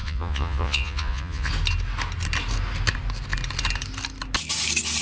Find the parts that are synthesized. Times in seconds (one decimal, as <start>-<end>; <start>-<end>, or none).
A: 0.0-1.5